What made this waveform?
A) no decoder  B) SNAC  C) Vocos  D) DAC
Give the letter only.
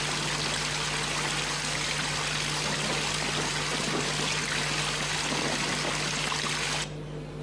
A